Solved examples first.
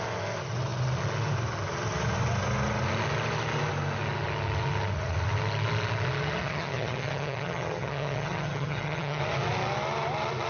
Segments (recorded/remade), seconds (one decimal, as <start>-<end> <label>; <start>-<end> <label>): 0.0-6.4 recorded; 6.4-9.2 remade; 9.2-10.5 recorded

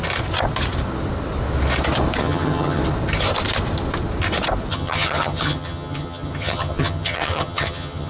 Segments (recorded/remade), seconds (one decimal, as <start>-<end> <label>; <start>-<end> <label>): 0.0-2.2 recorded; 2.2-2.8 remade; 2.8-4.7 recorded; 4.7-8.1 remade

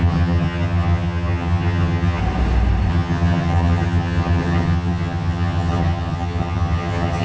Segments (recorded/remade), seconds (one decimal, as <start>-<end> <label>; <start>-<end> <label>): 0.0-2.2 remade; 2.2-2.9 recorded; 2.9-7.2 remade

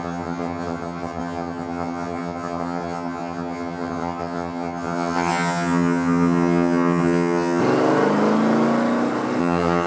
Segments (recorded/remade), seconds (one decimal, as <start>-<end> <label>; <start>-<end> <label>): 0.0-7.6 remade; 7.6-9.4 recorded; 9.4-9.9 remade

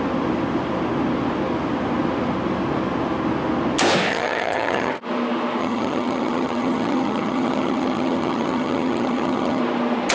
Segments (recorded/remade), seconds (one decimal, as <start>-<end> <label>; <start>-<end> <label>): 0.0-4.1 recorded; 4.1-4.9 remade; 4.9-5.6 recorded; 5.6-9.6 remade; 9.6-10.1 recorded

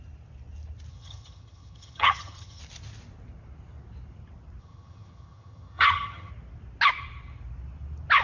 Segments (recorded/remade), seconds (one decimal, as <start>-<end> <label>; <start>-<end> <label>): 0.0-0.9 recorded; 0.9-2.6 remade; 2.6-4.6 recorded; 4.6-6.3 remade; 6.3-8.2 recorded

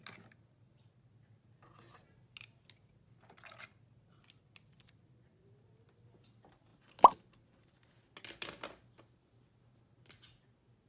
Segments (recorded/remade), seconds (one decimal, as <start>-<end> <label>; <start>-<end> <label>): 0.0-10.9 recorded